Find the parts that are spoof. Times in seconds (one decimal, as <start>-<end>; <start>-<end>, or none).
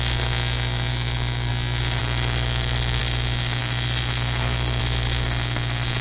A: 0.9-1.5; 2.0-3.0; 3.6-4.8